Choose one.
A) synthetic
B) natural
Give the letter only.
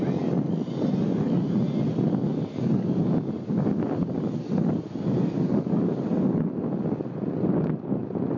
B